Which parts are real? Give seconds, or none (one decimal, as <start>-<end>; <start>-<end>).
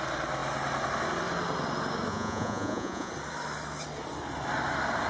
0.0-2.1; 3.1-5.1